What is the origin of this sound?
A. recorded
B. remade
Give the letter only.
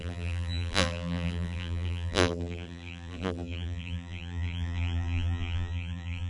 B